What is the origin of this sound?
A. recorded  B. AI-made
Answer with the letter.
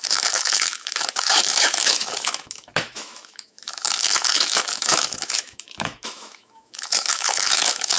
B